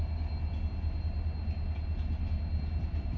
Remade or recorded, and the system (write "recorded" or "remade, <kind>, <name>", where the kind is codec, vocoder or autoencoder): recorded